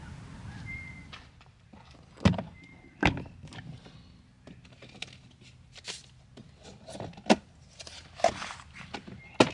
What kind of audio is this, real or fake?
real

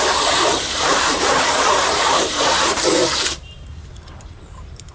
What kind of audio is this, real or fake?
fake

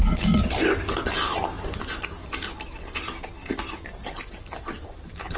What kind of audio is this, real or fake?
real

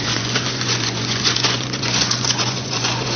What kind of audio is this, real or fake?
fake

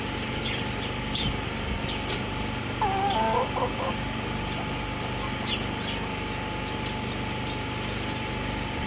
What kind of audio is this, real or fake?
real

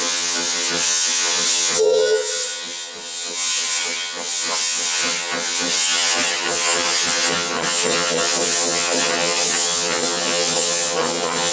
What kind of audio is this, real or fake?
fake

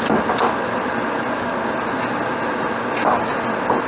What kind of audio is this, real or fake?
real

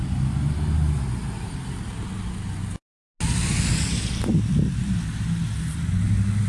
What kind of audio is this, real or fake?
real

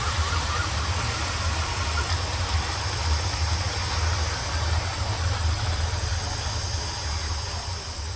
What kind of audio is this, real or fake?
real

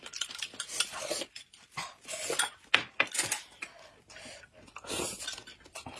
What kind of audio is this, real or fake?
real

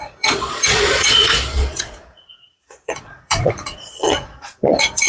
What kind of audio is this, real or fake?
fake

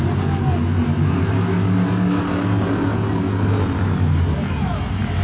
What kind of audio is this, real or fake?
real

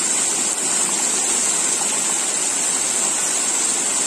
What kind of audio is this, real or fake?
real